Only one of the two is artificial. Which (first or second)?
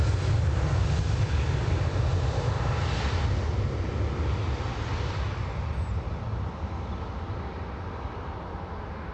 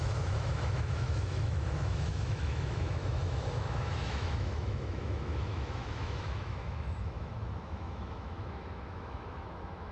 second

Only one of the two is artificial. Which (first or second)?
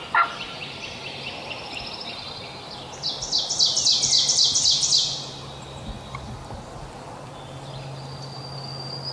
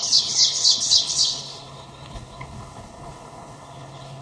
second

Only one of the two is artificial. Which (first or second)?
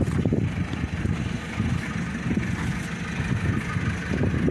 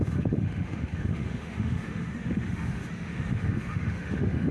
second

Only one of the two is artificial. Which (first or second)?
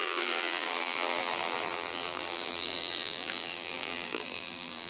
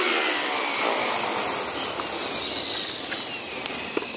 first